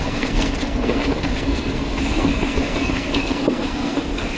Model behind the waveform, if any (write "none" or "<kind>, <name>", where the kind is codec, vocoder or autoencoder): codec, SNAC